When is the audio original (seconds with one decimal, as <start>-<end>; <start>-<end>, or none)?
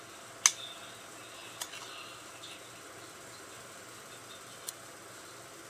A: 0.0-5.7